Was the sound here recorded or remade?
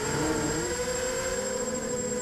recorded